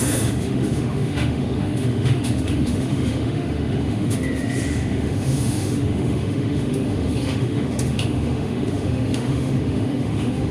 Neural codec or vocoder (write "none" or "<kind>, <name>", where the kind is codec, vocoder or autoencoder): autoencoder, DAC-VAE